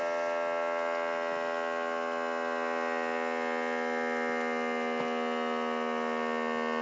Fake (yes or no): no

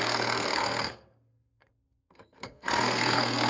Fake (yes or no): yes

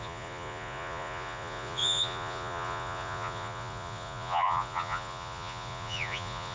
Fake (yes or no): yes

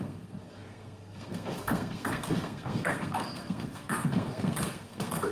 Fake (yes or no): yes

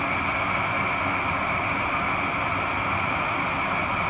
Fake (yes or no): no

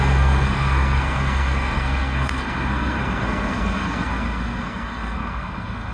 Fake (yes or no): yes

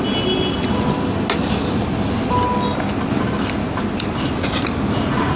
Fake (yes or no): no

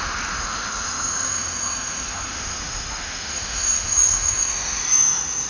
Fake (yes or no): yes